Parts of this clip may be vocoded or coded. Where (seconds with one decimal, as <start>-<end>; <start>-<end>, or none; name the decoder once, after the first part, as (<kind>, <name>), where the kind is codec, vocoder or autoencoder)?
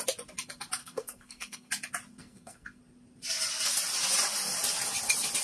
0.8-1.7 (codec, SNAC); 2.1-2.8